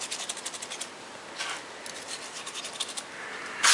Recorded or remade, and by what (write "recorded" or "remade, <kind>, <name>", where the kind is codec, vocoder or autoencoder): recorded